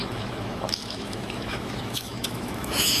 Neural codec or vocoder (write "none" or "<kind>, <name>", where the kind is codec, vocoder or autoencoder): autoencoder, DAC-VAE